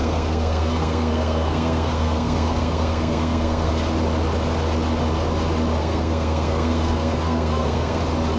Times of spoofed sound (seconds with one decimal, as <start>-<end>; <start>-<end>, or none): 0.0-3.7; 5.8-8.0